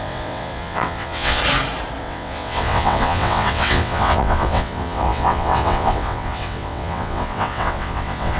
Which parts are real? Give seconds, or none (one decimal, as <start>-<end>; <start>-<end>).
1.4-2.0

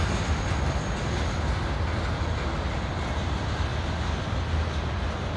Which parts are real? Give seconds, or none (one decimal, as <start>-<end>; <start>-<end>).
0.0-5.4

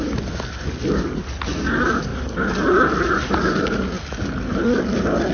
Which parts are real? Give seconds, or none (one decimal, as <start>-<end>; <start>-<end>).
0.0-5.3

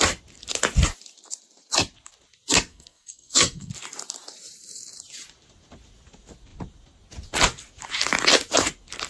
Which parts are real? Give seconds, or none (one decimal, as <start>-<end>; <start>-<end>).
0.0-2.7; 3.7-9.1

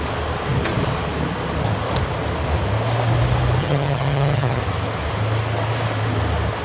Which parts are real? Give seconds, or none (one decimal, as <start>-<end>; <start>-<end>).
0.0-3.6; 4.6-6.6

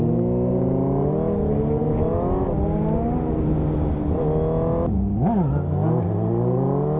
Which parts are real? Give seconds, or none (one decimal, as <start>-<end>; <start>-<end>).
0.0-7.0

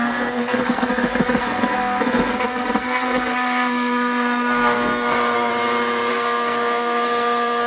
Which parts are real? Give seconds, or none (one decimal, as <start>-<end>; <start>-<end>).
5.5-6.1